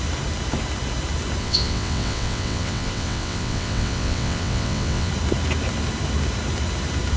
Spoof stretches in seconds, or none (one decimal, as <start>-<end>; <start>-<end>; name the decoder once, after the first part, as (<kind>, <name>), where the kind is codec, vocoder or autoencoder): 1.4-5.1 (vocoder, WaveNeXt)